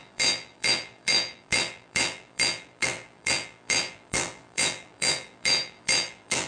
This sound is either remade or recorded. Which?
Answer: remade